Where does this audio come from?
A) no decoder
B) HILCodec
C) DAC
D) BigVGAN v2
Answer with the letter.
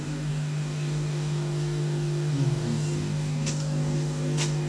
C